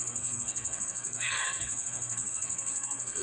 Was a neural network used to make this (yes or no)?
yes